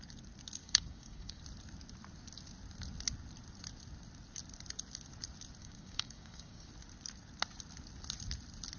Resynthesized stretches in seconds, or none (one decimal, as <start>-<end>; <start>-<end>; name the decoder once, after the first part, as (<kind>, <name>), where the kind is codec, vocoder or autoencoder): 0.6-1.4 (codec, DAC); 5.6-6.7